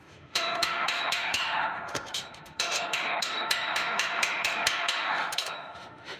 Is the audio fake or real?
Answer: fake